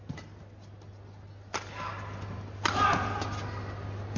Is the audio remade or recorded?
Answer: recorded